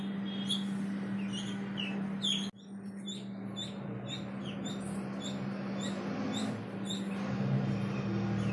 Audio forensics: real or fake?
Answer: real